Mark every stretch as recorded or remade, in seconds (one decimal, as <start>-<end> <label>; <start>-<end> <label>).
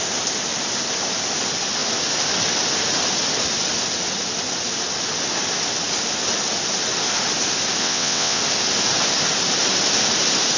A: 0.0-7.8 recorded; 7.8-8.4 remade; 8.4-10.6 recorded